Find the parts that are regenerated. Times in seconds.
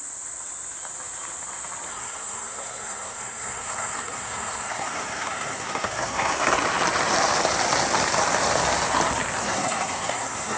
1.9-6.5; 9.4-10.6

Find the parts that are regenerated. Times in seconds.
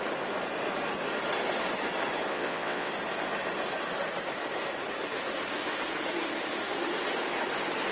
2.3-2.9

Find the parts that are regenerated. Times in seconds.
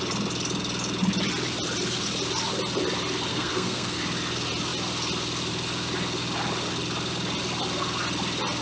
3.3-4.0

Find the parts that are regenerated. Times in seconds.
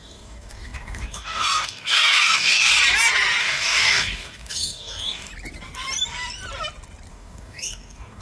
0.0-2.7; 3.4-5.3; 7.1-8.2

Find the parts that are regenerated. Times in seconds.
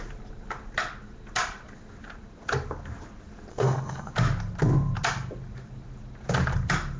3.5-4.1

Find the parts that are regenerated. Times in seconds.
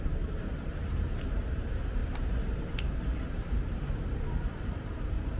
0.0-5.4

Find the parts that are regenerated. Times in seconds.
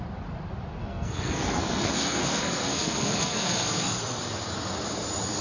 0.8-4.0